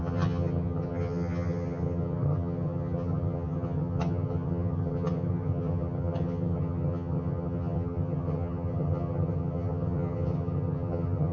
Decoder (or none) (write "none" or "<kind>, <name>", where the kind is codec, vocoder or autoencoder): vocoder, HiFi-GAN